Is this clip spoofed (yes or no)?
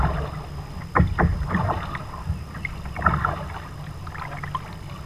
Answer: no